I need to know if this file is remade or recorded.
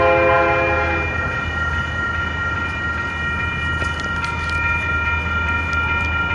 recorded